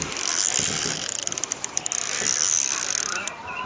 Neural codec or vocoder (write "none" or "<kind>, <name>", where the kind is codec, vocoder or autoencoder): none